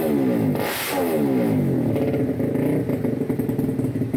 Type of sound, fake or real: real